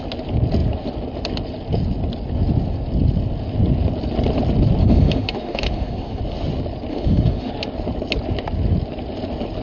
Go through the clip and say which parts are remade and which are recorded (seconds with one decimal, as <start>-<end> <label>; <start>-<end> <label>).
0.0-4.8 recorded; 4.8-6.2 remade; 6.2-6.9 recorded; 6.9-7.5 remade; 7.5-9.6 recorded